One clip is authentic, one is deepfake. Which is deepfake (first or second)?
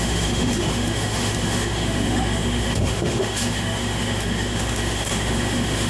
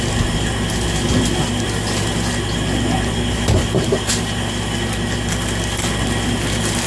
first